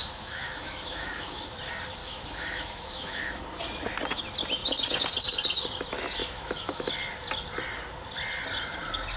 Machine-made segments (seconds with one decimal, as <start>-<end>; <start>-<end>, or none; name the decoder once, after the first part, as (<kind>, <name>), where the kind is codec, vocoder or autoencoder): 0.0-1.5 (autoencoder, DAC-VAE); 2.0-3.4; 6.2-6.9